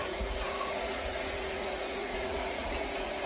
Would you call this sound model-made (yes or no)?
yes